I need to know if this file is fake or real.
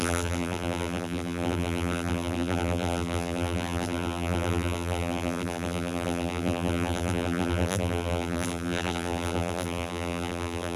fake